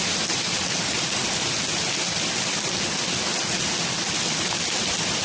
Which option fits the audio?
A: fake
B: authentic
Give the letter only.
B